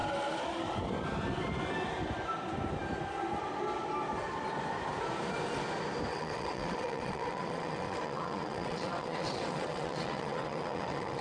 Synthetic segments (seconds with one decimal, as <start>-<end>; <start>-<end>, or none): 6.1-11.2